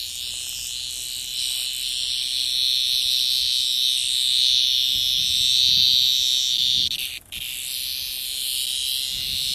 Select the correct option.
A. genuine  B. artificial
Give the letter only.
A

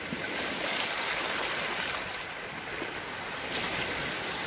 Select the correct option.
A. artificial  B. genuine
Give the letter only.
B